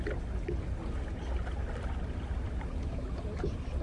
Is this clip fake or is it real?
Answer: real